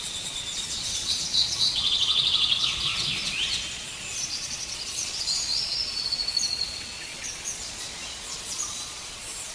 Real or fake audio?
fake